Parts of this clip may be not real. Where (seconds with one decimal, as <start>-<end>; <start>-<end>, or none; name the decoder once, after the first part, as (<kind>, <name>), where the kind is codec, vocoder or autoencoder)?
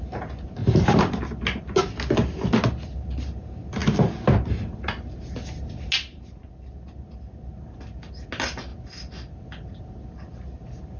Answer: none